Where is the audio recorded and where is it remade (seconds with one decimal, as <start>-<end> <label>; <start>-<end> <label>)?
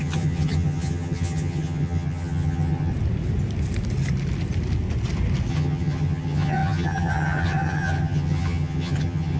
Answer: 0.0-2.9 remade; 2.9-5.5 recorded; 5.5-9.4 remade